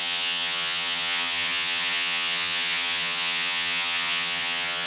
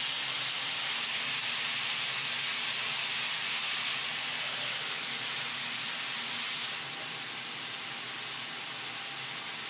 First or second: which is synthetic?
first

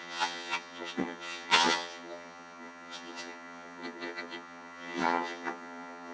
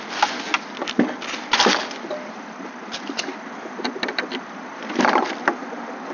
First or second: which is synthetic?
first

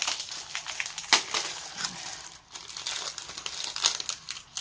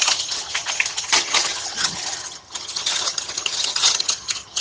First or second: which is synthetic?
second